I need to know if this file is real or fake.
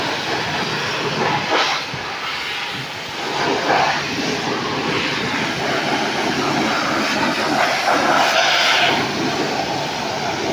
real